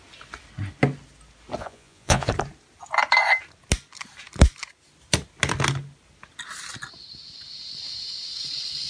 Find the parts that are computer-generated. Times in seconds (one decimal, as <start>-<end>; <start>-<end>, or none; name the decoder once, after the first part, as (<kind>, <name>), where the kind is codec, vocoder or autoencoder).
1.6-2.3 (vocoder, Vocos)